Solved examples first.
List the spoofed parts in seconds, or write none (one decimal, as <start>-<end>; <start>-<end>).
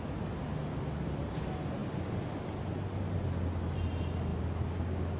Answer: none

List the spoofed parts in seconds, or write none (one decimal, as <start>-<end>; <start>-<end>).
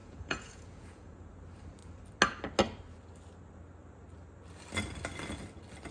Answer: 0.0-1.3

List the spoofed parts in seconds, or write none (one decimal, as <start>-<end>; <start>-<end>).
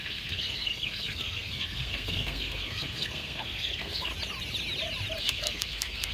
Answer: 0.0-4.1; 5.2-6.1